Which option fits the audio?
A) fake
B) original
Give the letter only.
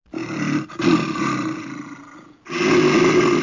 B